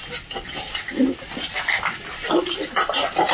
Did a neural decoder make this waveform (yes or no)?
no